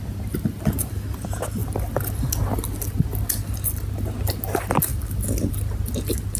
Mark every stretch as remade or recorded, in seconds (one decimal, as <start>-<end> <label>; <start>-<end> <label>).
0.0-6.4 recorded